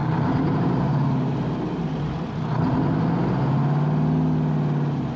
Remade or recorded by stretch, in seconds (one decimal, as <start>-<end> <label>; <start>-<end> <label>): 0.0-1.5 remade; 1.5-5.2 recorded